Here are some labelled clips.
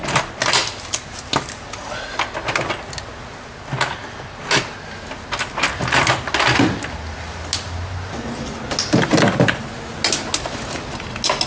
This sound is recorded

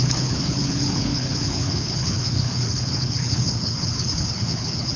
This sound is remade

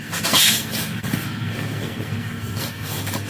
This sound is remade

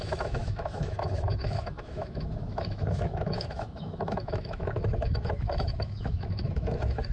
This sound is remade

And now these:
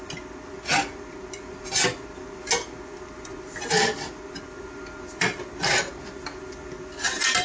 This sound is recorded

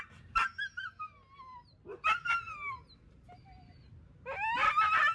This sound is recorded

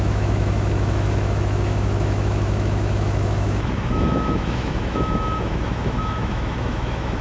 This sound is remade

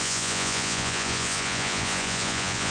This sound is remade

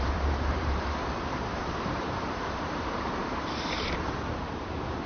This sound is remade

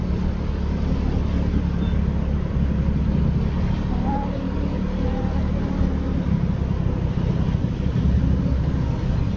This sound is recorded